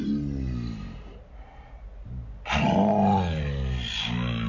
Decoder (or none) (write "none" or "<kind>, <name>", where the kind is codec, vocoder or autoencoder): none